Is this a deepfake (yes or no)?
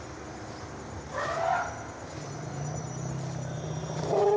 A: no